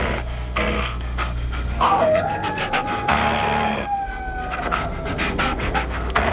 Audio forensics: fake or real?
fake